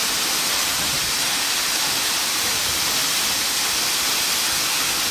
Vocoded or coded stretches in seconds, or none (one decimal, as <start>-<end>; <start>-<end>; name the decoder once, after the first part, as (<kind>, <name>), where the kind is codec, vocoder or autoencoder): 0.0-2.9 (vocoder, BigVGAN v2)